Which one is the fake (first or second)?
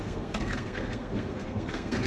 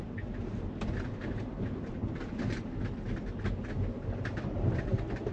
first